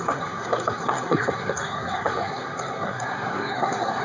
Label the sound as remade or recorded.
remade